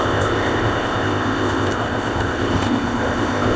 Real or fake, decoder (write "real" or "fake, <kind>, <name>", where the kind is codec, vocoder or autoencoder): fake, codec, ZipCodec